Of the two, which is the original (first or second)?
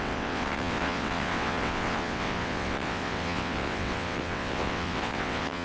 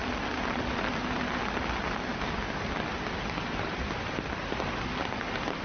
second